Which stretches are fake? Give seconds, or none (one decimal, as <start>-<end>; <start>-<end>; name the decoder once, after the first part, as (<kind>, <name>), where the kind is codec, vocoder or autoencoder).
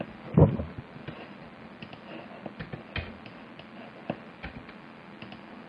none